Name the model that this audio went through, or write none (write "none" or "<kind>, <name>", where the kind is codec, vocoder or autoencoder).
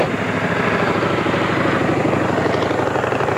none